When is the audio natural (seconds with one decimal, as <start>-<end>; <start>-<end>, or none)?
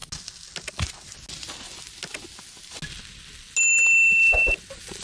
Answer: 0.0-5.0